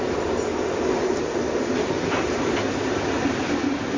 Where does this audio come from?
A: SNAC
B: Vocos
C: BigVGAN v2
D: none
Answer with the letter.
D